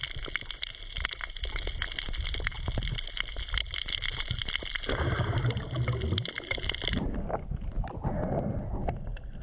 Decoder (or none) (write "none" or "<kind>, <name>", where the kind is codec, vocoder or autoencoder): none